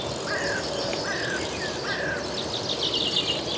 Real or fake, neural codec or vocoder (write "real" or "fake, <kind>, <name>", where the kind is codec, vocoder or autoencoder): real